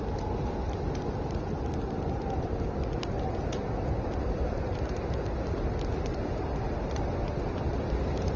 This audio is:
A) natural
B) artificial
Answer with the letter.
A